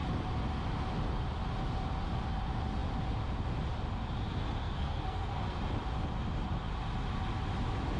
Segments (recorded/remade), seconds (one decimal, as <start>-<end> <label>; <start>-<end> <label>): 0.0-4.6 recorded; 4.6-5.6 remade; 5.6-8.0 recorded